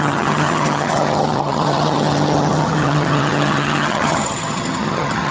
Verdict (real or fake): fake